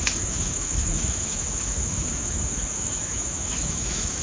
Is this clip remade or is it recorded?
remade